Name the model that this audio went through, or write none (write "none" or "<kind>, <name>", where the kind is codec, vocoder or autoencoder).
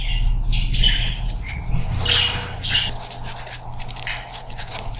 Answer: none